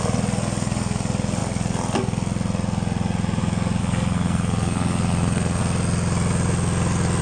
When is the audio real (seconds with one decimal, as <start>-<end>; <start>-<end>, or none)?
0.0-3.8; 5.6-7.2